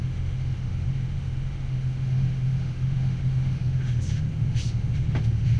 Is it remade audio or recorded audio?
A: remade